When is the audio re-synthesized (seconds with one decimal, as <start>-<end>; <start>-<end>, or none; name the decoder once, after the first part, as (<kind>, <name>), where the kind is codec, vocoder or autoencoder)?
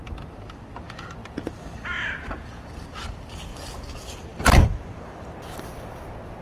1.2-3.5 (vocoder, BigVGAN v2); 4.3-6.0